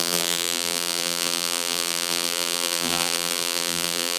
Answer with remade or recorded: remade